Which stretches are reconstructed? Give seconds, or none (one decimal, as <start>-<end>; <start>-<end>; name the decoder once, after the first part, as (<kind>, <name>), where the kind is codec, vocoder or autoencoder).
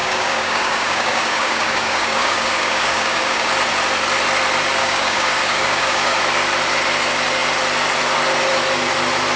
0.0-3.5 (codec, DAC); 4.8-6.2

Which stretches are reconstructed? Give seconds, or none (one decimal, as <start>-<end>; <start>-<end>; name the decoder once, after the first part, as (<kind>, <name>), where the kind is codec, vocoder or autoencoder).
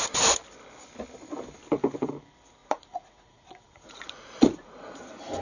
2.6-5.0 (vocoder, Vocos)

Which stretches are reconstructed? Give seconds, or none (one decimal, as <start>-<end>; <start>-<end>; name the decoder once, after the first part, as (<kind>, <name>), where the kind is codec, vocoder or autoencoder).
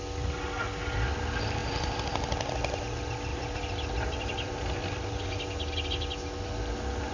1.6-2.5 (vocoder, BigVGAN v2); 3.3-5.3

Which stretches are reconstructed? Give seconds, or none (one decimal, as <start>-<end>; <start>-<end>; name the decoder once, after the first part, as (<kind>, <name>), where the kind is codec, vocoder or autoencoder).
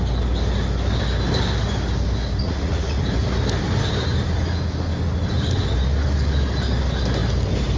2.4-3.0 (vocoder, Vocos)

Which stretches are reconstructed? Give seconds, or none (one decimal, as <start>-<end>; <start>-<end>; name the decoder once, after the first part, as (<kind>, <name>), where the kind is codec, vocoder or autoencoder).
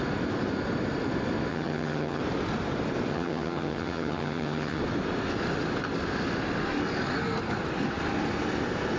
1.5-2.2 (vocoder, HiFi-GAN); 3.1-4.8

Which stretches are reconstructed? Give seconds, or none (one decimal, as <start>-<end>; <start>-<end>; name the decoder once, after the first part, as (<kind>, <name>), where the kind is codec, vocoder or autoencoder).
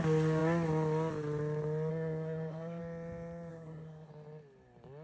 1.9-2.8 (codec, SNAC); 3.5-4.1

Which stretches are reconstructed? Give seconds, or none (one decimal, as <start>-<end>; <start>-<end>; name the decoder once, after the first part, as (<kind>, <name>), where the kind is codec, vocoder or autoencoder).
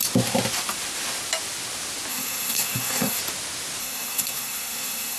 2.1-3.2 (codec, SNAC); 3.8-5.2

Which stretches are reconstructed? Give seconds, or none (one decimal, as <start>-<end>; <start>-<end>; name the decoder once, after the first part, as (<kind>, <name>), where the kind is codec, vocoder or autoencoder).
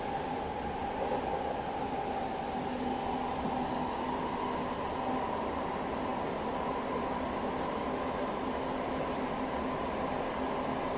none